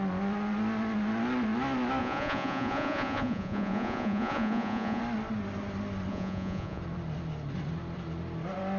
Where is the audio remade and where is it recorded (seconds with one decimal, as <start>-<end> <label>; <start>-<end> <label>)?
0.0-2.0 recorded; 2.0-5.0 remade; 5.0-6.1 recorded; 6.1-6.8 remade; 6.8-8.8 recorded